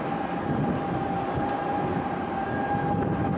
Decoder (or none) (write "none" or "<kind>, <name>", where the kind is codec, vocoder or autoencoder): none